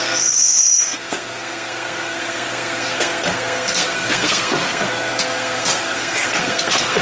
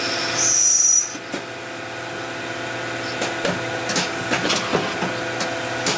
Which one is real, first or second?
second